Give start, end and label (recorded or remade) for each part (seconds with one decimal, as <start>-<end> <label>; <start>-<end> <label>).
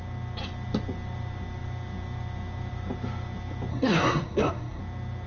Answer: 0.0-3.7 recorded; 3.7-4.8 remade; 4.8-5.3 recorded